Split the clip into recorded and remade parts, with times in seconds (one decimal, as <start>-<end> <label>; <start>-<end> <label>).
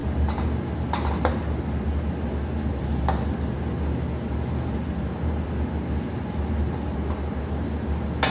0.0-8.3 recorded